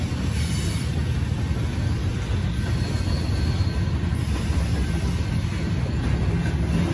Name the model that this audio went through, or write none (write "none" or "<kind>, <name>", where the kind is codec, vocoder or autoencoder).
none